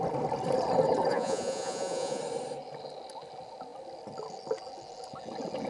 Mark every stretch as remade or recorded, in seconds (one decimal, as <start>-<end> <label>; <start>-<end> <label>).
0.0-1.1 recorded; 1.1-2.2 remade; 2.2-5.7 recorded